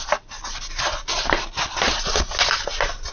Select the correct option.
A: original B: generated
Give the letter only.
A